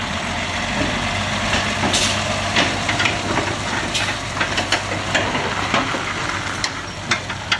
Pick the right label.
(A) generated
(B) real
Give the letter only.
B